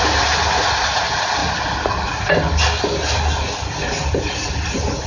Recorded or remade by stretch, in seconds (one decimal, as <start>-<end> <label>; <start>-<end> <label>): 0.0-5.1 recorded